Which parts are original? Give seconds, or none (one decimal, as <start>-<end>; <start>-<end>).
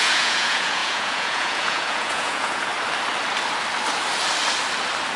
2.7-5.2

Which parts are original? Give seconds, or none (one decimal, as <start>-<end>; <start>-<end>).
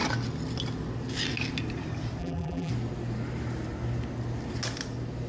0.0-2.2; 2.7-5.3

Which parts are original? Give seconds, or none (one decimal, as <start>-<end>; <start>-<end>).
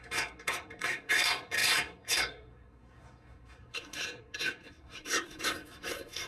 none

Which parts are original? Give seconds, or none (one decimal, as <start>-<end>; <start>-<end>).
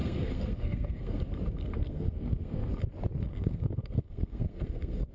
1.2-1.6; 2.7-3.3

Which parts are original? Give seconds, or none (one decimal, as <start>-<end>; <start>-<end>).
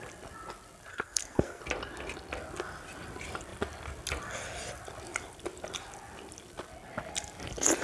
0.0-0.9; 1.6-7.8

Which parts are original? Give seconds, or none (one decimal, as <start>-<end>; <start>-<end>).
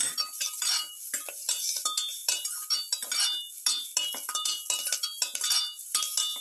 0.0-6.4